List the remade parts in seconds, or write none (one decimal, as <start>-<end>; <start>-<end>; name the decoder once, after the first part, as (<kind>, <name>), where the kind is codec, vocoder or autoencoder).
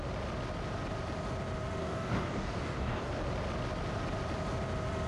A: 1.8-3.1 (codec, DAC)